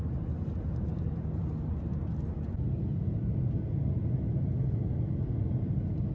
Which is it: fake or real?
real